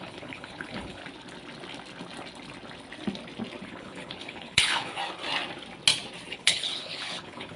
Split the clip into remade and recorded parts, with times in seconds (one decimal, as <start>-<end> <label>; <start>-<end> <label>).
0.0-1.0 remade; 1.0-3.6 recorded; 3.6-5.0 remade; 5.0-6.3 recorded; 6.3-7.6 remade